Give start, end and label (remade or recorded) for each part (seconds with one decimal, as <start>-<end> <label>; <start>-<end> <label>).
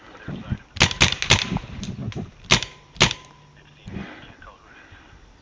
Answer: 0.0-5.4 recorded